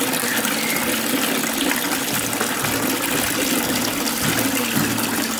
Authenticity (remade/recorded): recorded